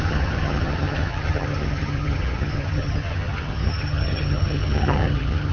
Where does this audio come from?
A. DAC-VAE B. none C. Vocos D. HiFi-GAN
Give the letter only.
D